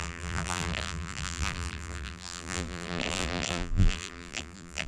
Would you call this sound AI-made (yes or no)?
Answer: yes